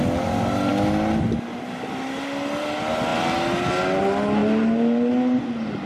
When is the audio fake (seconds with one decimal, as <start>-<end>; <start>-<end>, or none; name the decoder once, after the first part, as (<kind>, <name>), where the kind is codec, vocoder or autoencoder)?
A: none